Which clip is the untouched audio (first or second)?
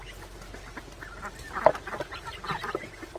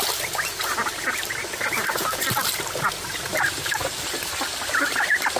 first